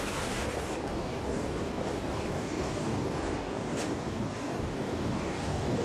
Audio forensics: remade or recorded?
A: remade